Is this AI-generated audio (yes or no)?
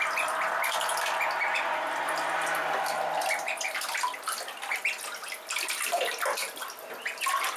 no